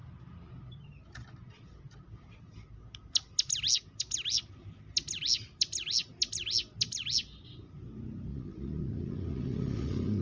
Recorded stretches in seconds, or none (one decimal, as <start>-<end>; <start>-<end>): 0.0-8.3